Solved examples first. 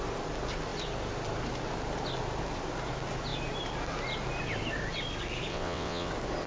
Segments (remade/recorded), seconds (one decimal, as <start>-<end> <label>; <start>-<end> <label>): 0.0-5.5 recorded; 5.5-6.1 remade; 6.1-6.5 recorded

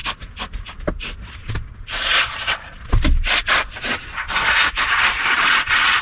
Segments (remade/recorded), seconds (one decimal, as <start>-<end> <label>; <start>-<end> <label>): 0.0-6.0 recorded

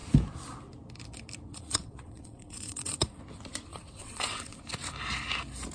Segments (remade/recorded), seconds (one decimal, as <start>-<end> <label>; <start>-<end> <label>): 0.0-1.5 recorded; 1.5-3.2 remade; 3.2-3.7 recorded; 3.7-4.6 remade; 4.6-5.7 recorded

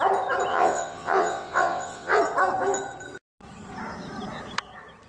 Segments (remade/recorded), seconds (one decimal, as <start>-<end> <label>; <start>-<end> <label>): 0.0-0.5 recorded; 0.5-2.2 remade; 2.2-5.1 recorded

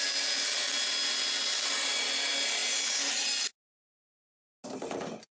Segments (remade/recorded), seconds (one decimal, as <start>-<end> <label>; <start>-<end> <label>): 0.0-5.3 recorded

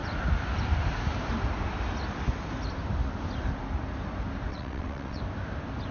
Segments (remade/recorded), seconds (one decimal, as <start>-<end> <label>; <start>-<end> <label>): 0.0-4.5 recorded; 4.5-5.2 remade; 5.2-5.9 recorded